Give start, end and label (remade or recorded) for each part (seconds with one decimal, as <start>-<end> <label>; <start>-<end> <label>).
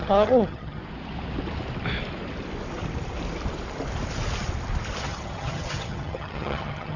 0.0-0.8 remade; 0.8-5.0 recorded; 5.0-7.0 remade